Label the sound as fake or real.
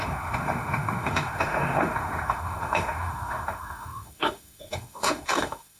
fake